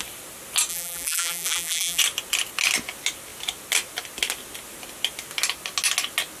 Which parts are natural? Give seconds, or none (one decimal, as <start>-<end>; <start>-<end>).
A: 0.0-0.7; 2.0-6.4